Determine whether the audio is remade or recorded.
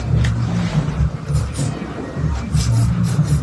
remade